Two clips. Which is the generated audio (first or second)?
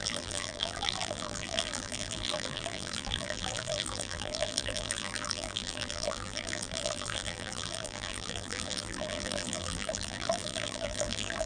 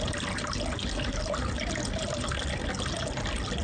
first